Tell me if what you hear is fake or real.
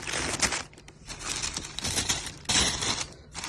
real